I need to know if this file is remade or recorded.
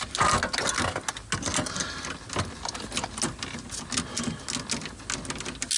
recorded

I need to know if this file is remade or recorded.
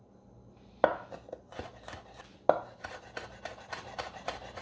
recorded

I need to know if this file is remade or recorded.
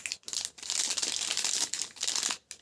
recorded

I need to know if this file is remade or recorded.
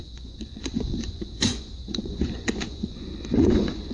remade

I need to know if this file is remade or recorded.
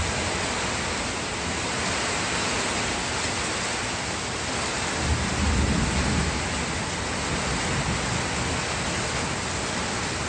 recorded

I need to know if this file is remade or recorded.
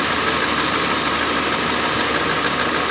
recorded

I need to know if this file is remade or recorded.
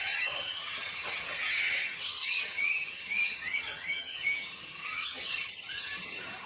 remade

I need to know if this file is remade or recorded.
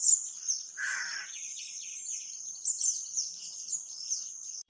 remade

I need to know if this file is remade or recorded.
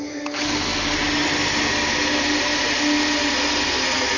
recorded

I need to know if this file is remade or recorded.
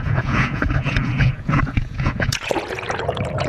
remade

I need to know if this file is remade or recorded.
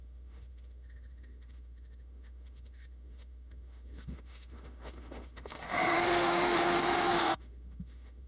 remade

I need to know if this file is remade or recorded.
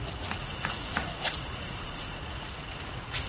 remade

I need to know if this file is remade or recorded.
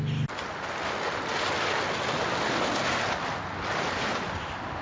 recorded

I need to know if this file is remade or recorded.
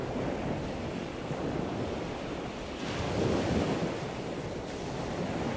recorded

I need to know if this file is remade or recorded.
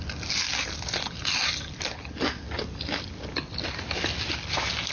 recorded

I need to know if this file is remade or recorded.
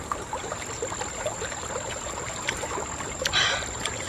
recorded